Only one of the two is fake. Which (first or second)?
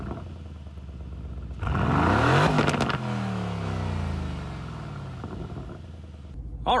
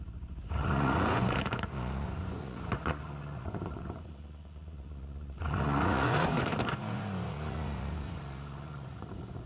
second